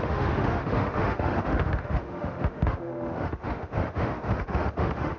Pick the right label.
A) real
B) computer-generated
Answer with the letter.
B